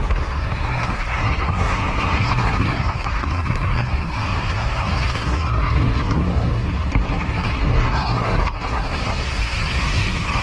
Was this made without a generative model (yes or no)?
no